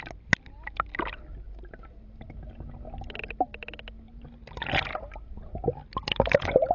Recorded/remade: recorded